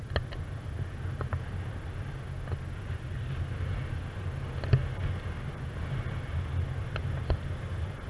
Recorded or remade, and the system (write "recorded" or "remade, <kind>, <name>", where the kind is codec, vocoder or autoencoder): recorded